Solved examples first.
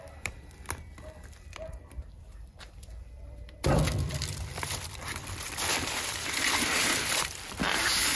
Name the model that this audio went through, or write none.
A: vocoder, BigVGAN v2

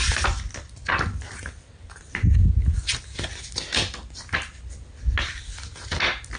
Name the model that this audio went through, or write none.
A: none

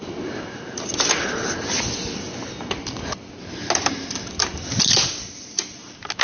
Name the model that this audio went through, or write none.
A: none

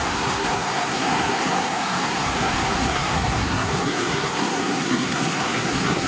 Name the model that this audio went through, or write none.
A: codec, SNAC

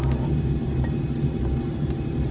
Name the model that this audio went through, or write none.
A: none